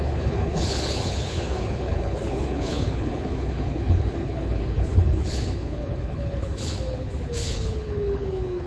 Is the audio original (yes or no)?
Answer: no